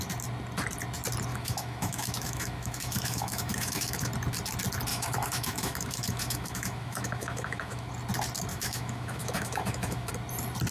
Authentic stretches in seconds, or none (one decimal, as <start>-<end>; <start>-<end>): 0.0-1.3; 4.1-4.9; 7.9-8.5; 10.1-10.7